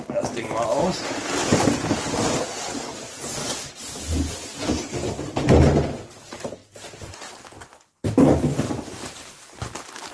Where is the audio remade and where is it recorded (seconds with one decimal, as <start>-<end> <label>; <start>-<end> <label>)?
0.0-10.1 recorded